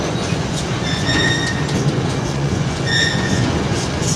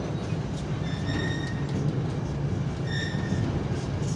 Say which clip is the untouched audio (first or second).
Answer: second